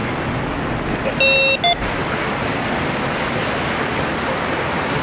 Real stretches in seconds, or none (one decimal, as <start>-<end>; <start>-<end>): 0.0-5.0